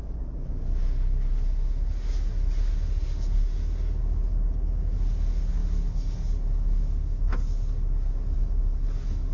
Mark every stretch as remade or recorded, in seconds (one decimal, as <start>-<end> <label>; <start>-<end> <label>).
0.0-9.3 recorded